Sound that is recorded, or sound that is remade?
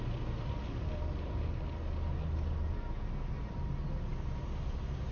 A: recorded